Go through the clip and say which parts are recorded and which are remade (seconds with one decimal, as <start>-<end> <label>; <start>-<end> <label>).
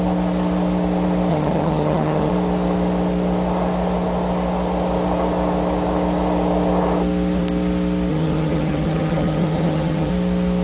0.0-1.3 recorded; 1.3-2.3 remade; 2.3-8.1 recorded; 8.1-10.1 remade; 10.1-10.6 recorded